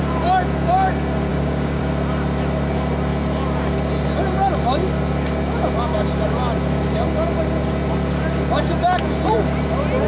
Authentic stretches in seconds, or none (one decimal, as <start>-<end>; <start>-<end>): 0.0-1.3; 1.8-10.1